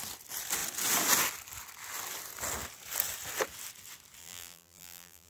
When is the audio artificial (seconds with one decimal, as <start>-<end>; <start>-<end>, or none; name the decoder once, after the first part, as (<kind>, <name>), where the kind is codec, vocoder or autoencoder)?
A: 4.2-5.3 (vocoder, BigVGAN v2)